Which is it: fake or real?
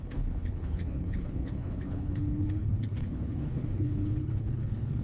fake